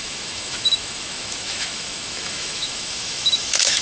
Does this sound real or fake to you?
fake